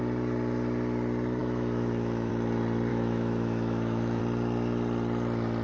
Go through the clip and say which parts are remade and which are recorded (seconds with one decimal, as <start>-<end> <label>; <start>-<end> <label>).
0.0-1.4 recorded; 1.4-2.3 remade; 2.3-2.9 recorded; 2.9-4.2 remade; 4.2-5.6 recorded